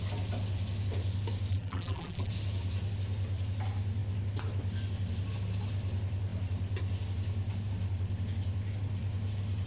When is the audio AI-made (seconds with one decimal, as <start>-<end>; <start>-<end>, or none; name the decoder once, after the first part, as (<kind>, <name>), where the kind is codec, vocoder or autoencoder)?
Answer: 1.5-2.3 (vocoder, BigVGAN v2)

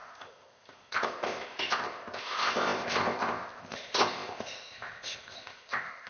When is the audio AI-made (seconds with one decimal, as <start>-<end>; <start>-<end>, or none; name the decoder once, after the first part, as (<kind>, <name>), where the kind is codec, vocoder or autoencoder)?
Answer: 0.0-6.1 (codec, ZipCodec)